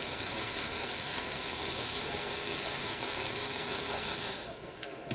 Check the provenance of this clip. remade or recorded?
remade